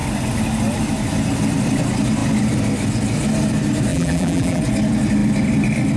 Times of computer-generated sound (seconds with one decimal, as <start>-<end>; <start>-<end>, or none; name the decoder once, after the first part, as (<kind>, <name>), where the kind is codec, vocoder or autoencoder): 3.9-4.6 (vocoder, BigVGAN v2)